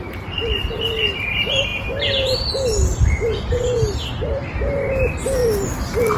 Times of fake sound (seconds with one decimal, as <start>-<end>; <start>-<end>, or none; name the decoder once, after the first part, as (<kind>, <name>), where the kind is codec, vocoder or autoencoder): none